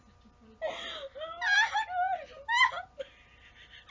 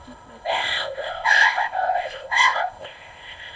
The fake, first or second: second